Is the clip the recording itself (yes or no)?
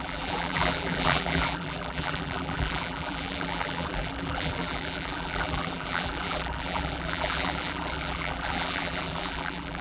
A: no